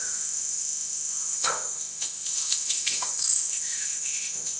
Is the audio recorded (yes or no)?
no